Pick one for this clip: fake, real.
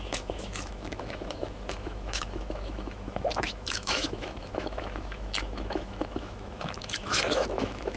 fake